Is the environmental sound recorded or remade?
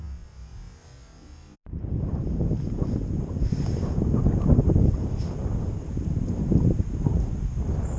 recorded